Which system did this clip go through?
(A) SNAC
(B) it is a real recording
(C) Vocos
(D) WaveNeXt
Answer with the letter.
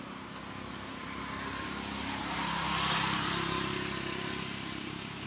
B